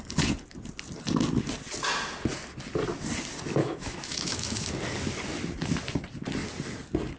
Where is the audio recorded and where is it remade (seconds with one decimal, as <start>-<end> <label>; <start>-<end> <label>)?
0.0-3.6 recorded; 3.6-4.7 remade; 4.7-7.2 recorded